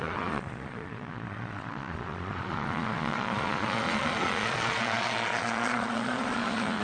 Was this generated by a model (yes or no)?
yes